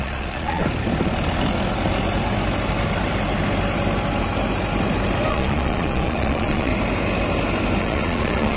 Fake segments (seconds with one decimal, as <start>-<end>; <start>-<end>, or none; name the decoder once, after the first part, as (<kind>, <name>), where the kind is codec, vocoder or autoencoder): 0.0-0.6 (vocoder, Vocos); 5.3-6.7; 7.8-8.6